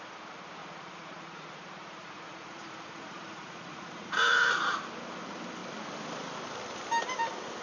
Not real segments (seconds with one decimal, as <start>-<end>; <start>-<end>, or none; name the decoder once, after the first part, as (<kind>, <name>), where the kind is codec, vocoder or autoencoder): 0.6-4.8 (vocoder, Vocos)